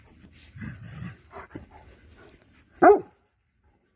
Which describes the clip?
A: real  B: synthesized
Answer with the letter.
A